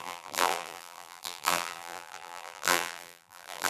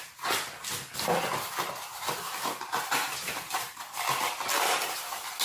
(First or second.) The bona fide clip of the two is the second